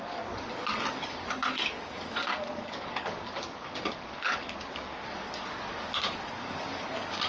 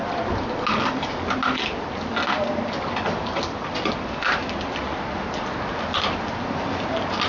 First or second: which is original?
second